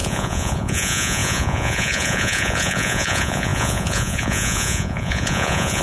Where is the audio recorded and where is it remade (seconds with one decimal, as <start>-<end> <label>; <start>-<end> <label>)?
0.0-5.8 remade